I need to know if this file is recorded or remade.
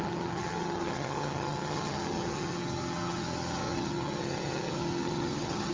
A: remade